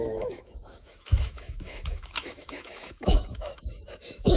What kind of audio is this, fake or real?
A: fake